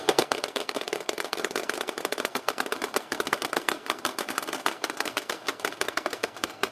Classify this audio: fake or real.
fake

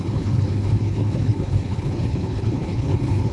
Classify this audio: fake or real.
fake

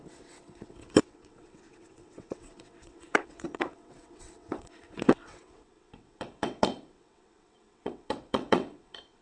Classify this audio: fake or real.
fake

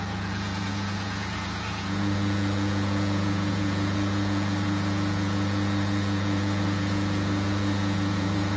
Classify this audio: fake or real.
fake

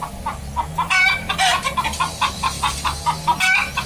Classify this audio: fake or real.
real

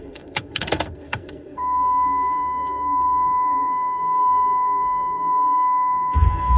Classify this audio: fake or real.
fake